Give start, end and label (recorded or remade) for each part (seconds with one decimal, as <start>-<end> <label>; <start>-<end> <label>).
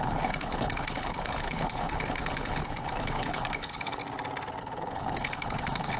0.0-4.0 remade; 4.0-4.6 recorded; 4.6-6.0 remade